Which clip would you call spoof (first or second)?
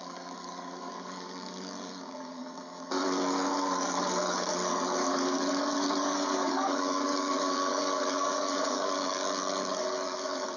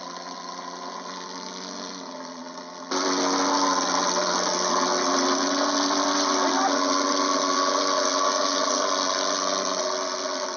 first